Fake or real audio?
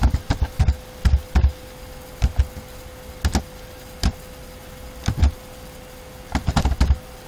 real